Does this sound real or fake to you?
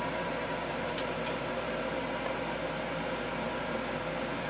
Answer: real